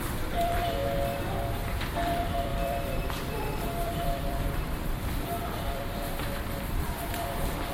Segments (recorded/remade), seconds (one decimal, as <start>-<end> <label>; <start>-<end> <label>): 0.0-0.8 remade; 0.8-1.5 recorded; 1.5-7.7 remade